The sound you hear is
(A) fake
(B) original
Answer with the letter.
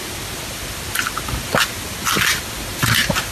B